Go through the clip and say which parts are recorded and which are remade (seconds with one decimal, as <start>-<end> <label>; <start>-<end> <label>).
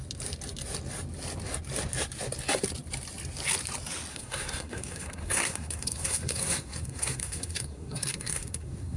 0.0-4.1 recorded; 4.1-9.0 remade